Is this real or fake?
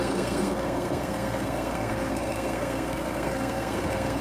fake